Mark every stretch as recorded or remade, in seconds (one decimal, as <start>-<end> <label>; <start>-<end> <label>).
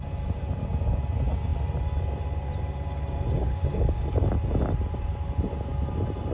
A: 0.0-3.4 recorded; 3.4-4.0 remade; 4.0-6.3 recorded